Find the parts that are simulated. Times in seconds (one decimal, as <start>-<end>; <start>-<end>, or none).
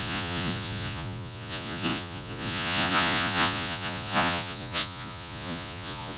0.0-6.2